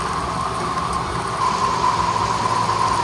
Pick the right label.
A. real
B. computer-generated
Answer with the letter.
A